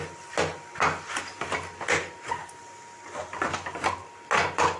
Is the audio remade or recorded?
recorded